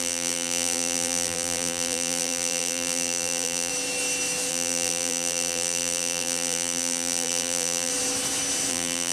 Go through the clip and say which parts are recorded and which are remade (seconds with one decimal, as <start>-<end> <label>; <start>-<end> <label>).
0.0-3.7 remade; 3.7-4.5 recorded; 4.5-7.9 remade; 7.9-8.7 recorded; 8.7-9.1 remade